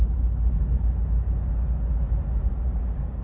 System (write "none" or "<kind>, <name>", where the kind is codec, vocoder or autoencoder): none